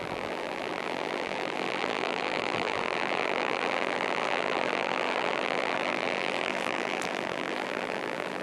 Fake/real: fake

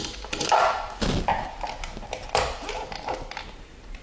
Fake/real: real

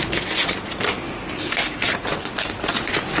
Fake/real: real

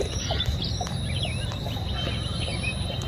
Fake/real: fake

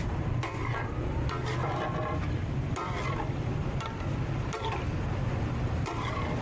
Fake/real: fake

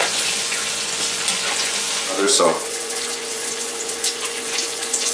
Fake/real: fake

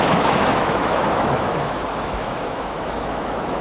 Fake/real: fake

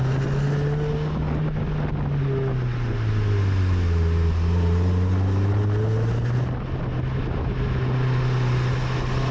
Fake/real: real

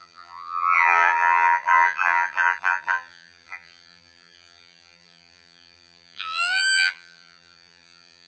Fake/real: fake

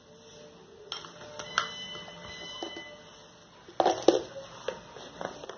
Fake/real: real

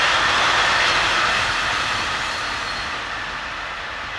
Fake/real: real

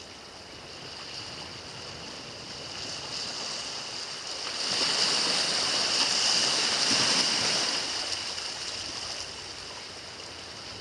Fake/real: real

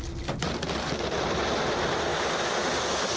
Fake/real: real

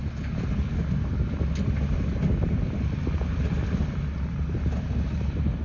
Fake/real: real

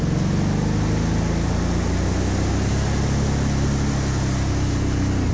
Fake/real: real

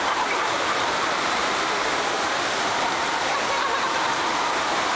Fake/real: fake